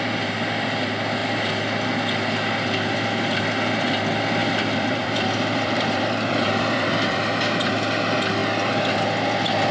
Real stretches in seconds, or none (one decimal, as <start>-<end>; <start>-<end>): 0.0-4.4; 7.7-9.7